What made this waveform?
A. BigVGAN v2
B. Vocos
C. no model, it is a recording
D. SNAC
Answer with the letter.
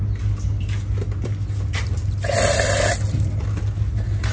C